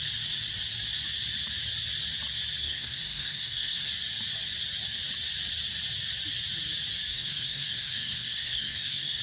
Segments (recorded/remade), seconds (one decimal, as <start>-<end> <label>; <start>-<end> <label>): 0.0-2.6 recorded; 2.6-3.9 remade; 3.9-7.1 recorded; 7.1-9.2 remade